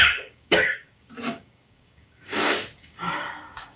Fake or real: fake